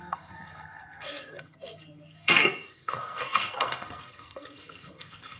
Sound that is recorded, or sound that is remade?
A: remade